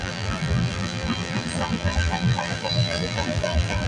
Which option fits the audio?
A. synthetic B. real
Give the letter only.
A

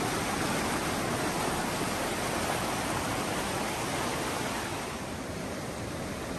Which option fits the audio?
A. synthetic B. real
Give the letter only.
B